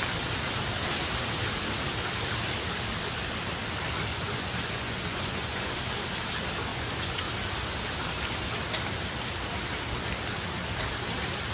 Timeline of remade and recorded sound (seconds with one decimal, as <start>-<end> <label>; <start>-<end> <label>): 0.0-4.1 recorded; 4.1-5.7 remade; 5.7-6.7 recorded; 6.7-7.3 remade; 7.3-11.5 recorded